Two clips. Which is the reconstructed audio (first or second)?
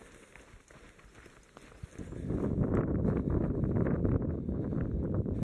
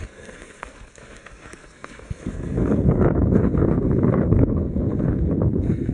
second